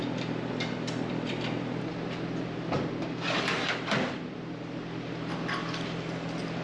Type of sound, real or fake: real